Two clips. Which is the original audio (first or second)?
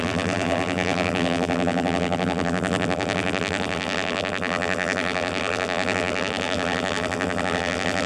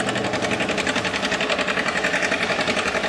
second